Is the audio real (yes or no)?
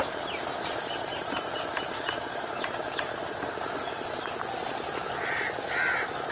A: yes